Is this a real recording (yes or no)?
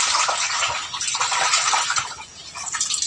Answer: yes